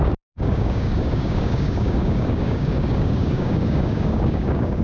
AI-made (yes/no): yes